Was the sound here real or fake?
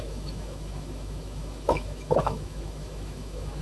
fake